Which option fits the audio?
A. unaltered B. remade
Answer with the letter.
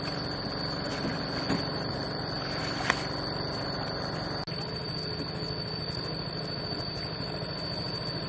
A